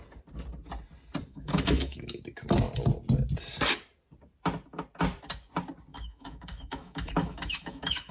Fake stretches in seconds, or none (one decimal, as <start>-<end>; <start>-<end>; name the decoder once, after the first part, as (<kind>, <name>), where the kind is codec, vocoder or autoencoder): 1.3-2.2 (autoencoder, DAC-VAE); 5.9-8.1